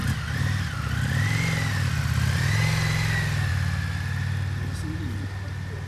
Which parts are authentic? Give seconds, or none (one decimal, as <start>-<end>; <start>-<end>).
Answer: 0.0-5.9

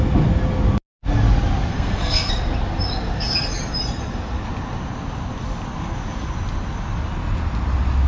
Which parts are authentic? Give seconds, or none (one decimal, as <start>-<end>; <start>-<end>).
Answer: 0.0-1.7; 2.3-8.1

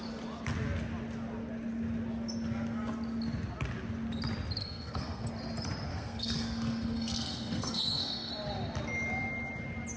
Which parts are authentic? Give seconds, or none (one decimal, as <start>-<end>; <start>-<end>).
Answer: 0.0-4.6; 5.3-5.9; 8.3-10.0

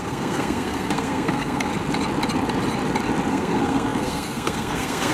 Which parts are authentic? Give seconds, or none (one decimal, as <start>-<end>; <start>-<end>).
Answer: 1.7-3.3

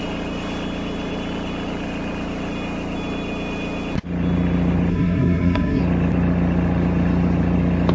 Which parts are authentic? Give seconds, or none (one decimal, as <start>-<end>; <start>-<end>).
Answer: 0.0-4.9; 5.8-7.9